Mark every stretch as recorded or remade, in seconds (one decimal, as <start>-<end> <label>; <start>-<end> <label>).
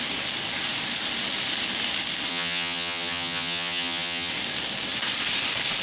0.0-2.3 recorded; 2.3-4.3 remade; 4.3-5.8 recorded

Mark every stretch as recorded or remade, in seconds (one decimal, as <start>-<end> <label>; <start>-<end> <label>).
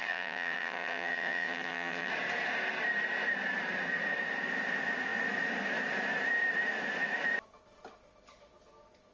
0.0-2.1 remade; 2.1-9.1 recorded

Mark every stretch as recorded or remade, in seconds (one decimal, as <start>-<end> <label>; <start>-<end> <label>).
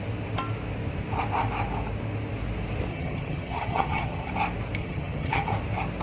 0.0-2.9 recorded; 2.9-4.3 remade; 4.3-4.8 recorded; 4.8-5.5 remade; 5.5-6.0 recorded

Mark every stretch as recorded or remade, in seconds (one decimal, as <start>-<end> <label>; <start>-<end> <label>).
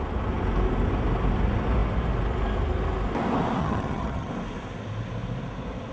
0.0-3.6 recorded; 3.6-4.3 remade; 4.3-5.9 recorded